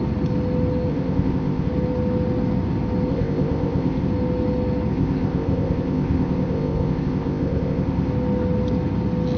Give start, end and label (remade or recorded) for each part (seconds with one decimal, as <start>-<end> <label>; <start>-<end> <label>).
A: 0.0-0.9 recorded; 0.9-1.7 remade; 1.7-3.1 recorded; 3.1-4.1 remade; 4.1-4.9 recorded; 4.9-8.1 remade; 8.1-9.4 recorded

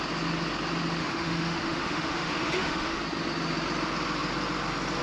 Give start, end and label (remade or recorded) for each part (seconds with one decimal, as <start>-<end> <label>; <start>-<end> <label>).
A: 0.0-1.0 recorded; 1.0-3.0 remade; 3.0-5.0 recorded

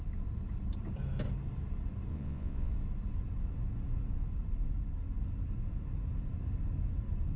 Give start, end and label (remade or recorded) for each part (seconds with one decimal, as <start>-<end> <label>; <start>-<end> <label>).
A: 0.0-2.1 recorded; 2.1-2.7 remade; 2.7-7.4 recorded